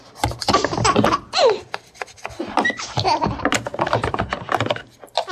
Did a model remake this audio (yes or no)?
no